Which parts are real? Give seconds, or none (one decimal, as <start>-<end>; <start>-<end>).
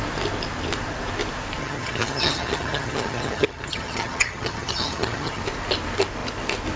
0.0-1.6; 5.4-6.8